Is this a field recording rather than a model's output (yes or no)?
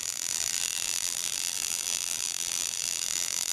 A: no